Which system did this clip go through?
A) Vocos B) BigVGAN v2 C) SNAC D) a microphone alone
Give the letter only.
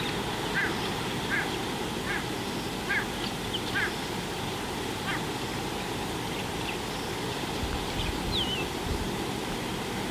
D